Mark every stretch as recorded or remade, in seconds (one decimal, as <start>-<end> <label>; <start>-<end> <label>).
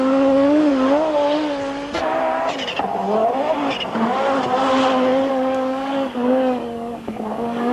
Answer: 0.0-0.7 remade; 0.7-5.3 recorded; 5.3-7.7 remade